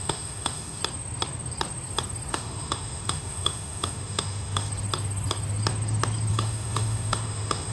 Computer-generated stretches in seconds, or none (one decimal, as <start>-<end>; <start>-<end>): 0.0-0.8; 2.3-4.7; 6.3-7.7